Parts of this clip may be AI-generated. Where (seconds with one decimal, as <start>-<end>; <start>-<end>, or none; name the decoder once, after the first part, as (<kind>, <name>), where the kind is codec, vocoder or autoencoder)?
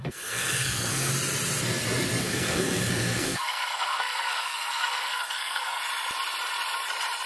0.0-1.1 (codec, SNAC); 2.2-5.8